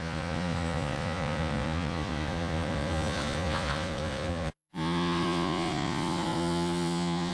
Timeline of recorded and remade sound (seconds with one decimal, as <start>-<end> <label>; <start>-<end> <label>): 0.0-7.3 remade